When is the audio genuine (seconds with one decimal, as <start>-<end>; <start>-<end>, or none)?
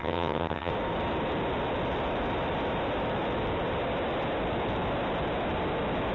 0.7-6.1